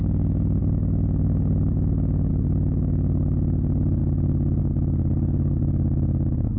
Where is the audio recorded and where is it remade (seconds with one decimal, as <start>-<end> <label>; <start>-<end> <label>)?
0.0-6.6 recorded